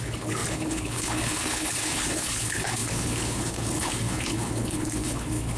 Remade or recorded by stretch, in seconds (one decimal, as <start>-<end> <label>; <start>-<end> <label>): 0.0-5.6 remade